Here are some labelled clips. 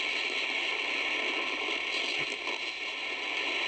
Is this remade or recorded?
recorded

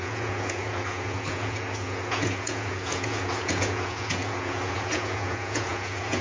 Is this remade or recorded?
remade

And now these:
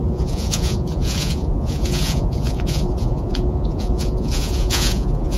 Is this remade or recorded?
remade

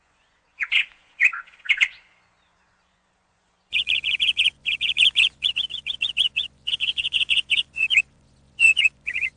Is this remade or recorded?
remade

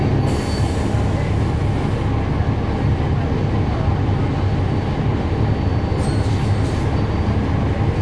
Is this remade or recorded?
recorded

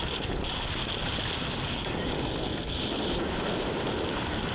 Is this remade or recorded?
recorded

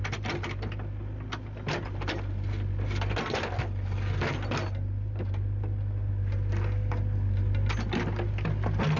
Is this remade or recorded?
recorded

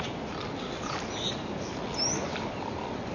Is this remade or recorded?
recorded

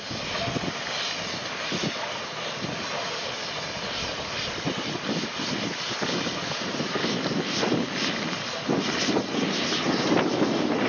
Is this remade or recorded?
recorded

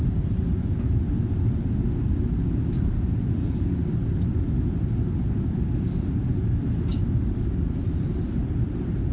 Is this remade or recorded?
recorded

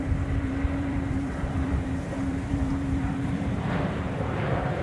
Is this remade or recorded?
remade